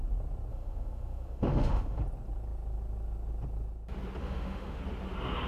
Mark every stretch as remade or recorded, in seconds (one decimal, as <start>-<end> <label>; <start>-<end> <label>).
0.0-0.5 recorded; 0.5-2.0 remade; 2.0-4.2 recorded; 4.2-4.8 remade; 4.8-5.5 recorded